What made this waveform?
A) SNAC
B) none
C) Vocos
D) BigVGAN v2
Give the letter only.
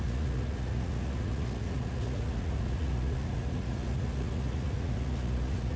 C